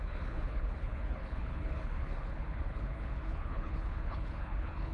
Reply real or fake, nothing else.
fake